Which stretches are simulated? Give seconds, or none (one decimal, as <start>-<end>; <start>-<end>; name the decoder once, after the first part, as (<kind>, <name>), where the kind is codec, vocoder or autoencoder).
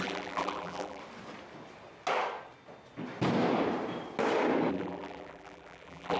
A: 0.0-1.0 (vocoder, BigVGAN v2); 4.7-6.2